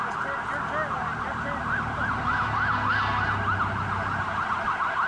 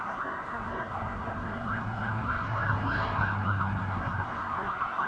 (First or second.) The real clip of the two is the first